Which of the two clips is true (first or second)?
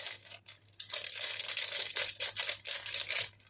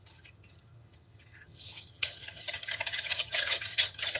first